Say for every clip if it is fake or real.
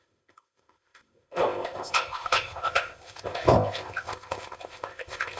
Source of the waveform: fake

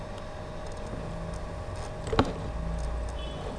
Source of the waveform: real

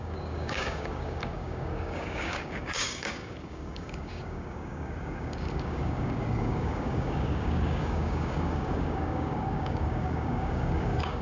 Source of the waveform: fake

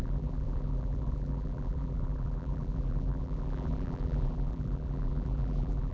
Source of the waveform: fake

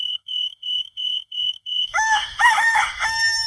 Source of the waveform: fake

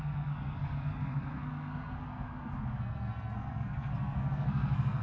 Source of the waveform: fake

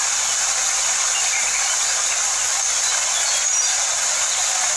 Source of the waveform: real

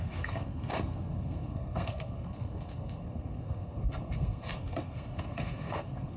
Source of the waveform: fake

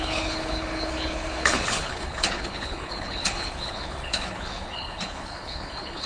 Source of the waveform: fake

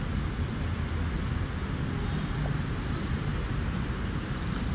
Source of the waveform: real